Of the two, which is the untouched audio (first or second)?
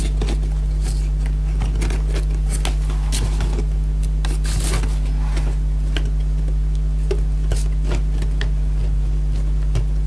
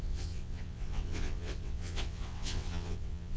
first